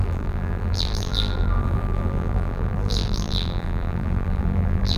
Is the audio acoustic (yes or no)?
no